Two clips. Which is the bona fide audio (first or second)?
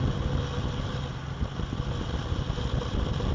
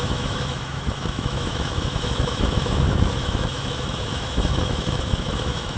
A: first